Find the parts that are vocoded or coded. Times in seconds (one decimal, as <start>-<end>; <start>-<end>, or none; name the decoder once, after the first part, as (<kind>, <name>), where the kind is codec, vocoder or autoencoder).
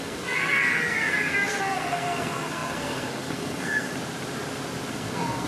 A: 0.0-3.9 (codec, SNAC); 4.9-5.5